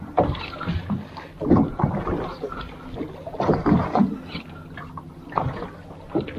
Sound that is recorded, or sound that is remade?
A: recorded